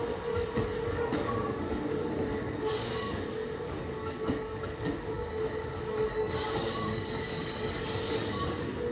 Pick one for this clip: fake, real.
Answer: fake